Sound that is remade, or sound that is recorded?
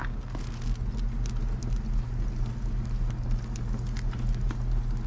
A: recorded